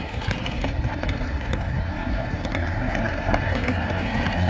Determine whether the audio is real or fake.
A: fake